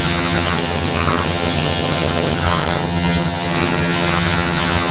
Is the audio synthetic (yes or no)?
yes